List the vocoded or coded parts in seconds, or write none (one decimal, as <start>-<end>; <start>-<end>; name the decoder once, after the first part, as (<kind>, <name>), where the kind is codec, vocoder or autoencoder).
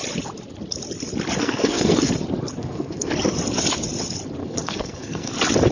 1.4-2.1 (codec, SNAC); 2.6-3.1; 4.4-5.3